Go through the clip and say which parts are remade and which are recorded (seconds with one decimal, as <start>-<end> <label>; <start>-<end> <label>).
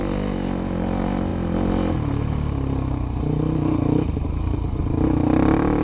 0.0-5.8 recorded